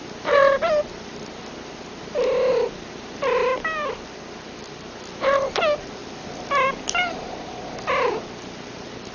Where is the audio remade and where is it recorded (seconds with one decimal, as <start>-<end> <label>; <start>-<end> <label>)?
0.0-9.1 recorded